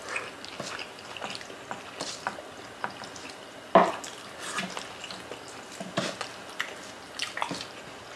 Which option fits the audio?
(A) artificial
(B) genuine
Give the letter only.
B